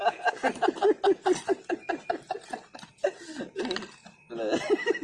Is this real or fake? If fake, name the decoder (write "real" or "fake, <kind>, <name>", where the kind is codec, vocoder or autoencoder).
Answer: real